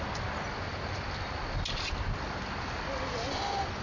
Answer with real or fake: real